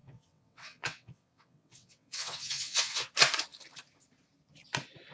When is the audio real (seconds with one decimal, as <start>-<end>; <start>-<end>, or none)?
3.1-5.1